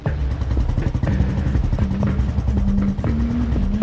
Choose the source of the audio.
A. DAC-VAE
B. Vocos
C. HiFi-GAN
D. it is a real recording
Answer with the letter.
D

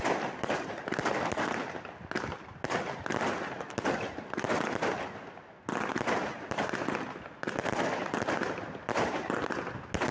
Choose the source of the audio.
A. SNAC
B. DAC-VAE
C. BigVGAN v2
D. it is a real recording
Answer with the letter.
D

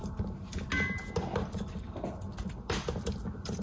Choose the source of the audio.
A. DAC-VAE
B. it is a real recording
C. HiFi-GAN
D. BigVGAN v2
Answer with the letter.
B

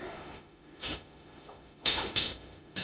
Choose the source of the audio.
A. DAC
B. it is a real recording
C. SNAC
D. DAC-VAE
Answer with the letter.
D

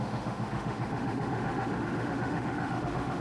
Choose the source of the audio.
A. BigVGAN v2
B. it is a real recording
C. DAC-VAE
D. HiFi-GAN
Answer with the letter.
C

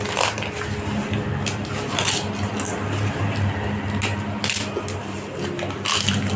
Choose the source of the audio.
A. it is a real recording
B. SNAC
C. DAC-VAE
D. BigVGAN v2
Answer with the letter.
A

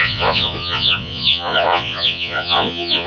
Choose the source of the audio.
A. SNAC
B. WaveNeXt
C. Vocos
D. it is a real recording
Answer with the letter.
C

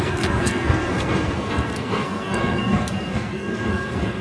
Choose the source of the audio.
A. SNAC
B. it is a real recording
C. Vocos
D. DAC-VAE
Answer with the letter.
A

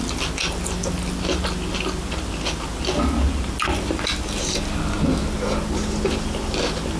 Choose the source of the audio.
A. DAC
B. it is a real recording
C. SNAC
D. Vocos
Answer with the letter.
B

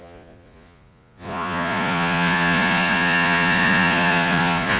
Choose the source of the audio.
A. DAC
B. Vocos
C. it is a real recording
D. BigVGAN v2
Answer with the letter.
B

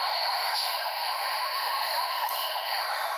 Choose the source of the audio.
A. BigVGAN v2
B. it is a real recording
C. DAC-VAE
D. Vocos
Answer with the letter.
C